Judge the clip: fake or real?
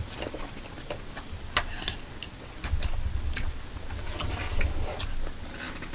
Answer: real